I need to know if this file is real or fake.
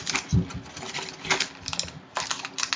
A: real